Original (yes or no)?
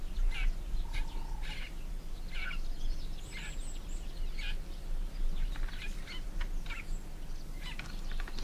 yes